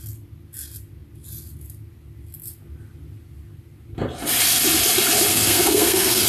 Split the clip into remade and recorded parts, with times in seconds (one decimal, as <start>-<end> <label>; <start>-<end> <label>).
0.0-5.3 recorded; 5.3-6.3 remade